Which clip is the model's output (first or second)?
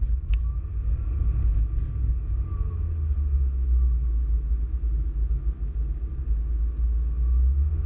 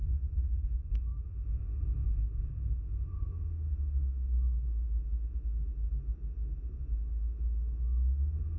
second